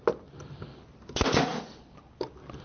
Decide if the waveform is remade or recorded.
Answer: recorded